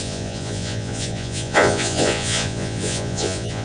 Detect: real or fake fake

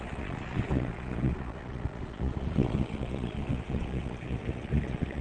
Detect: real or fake fake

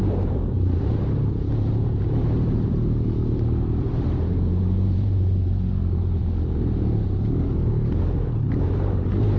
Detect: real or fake fake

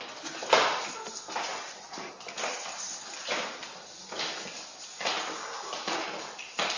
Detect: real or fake real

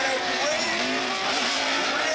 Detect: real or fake fake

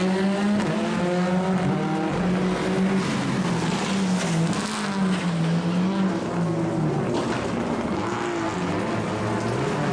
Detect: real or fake real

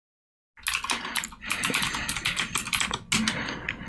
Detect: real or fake real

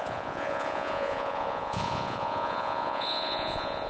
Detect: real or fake fake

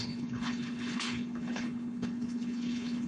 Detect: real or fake fake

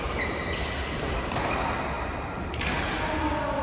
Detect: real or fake real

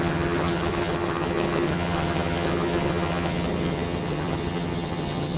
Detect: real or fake fake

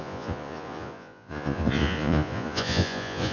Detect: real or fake fake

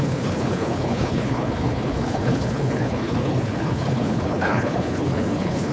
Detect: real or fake fake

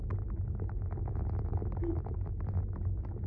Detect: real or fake real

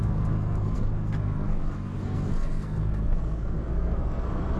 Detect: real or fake fake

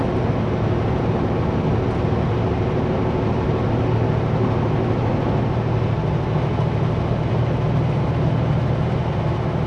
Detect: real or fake real